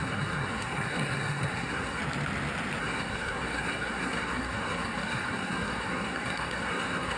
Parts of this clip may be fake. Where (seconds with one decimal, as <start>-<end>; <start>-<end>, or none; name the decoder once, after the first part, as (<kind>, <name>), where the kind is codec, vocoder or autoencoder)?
0.0-2.0 (codec, SNAC); 2.8-7.2